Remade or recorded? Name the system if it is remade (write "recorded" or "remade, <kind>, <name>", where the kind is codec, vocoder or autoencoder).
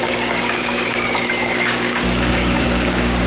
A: remade, codec, DAC